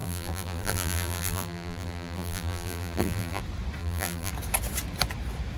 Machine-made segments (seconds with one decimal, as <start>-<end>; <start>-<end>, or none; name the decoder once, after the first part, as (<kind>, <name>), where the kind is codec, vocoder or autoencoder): 0.0-3.4 (vocoder, BigVGAN v2); 3.8-4.3